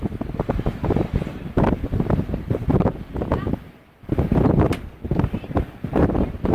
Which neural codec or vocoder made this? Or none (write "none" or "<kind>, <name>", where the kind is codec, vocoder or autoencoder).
vocoder, BigVGAN v2